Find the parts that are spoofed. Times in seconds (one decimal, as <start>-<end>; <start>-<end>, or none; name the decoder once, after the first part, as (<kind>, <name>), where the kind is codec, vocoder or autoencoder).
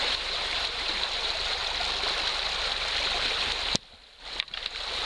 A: 0.0-1.6 (vocoder, BigVGAN v2)